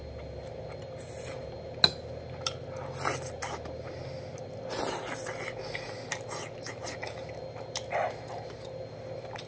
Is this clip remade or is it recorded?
recorded